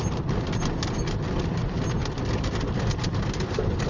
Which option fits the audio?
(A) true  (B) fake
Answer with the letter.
A